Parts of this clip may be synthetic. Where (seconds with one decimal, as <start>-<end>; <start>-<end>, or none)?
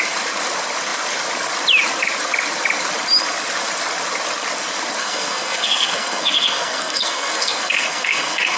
5.0-8.6